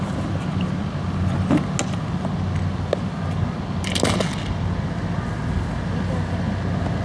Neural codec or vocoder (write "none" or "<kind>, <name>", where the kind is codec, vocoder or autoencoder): none